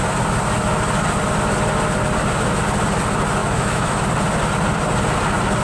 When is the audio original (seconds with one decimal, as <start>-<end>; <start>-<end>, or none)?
0.0-3.4; 4.0-5.6